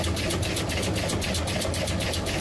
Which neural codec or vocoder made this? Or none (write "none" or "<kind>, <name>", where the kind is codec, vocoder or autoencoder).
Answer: none